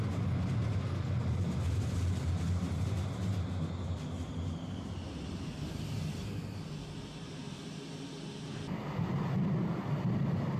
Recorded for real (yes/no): yes